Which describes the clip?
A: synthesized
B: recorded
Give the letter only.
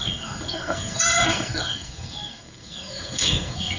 A